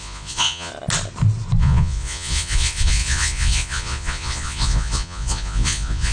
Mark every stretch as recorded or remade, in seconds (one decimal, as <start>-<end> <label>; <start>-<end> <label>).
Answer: 0.0-0.7 remade; 0.7-1.6 recorded; 1.6-6.1 remade